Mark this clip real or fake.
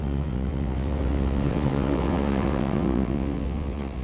fake